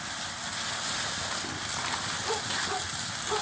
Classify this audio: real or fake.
real